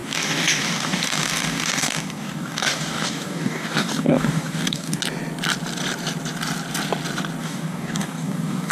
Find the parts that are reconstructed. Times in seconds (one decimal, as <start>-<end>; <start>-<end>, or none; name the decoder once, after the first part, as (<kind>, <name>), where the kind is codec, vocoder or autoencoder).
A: 0.0-5.0 (codec, DAC); 7.4-8.7